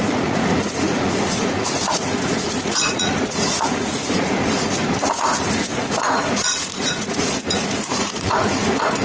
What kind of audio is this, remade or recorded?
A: remade